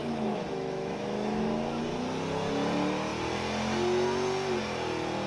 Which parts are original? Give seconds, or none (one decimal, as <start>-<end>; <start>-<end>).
1.8-5.3